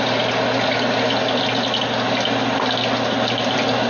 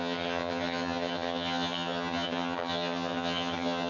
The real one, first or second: first